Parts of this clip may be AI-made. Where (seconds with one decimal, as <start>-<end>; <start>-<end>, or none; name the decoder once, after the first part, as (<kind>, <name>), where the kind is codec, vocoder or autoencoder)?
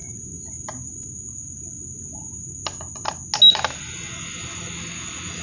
none